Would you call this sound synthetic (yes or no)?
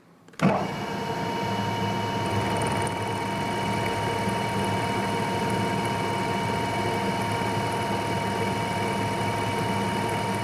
no